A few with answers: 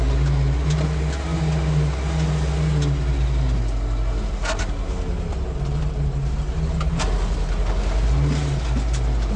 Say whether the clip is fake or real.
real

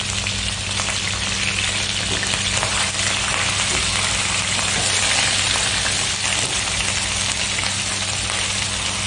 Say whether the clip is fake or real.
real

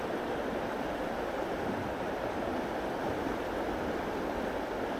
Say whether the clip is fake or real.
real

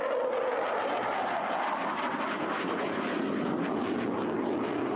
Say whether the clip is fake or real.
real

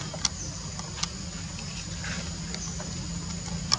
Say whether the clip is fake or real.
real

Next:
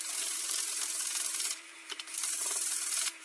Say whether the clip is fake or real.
fake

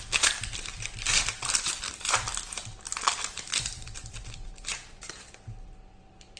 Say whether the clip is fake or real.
fake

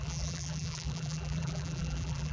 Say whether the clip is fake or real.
fake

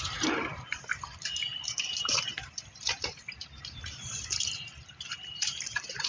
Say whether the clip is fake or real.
fake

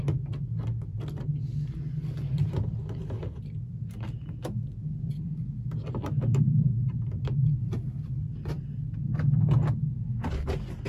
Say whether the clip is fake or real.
real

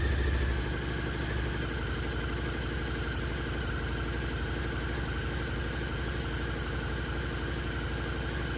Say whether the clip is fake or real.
real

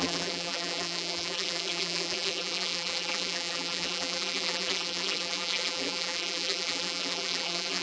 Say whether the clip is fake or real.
fake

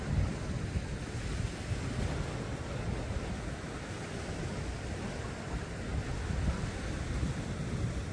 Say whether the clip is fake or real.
real